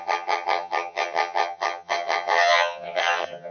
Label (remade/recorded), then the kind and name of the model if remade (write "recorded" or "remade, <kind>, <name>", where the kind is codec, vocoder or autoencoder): remade, vocoder, HiFi-GAN